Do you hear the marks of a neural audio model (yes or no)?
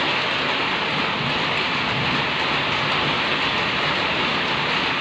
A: no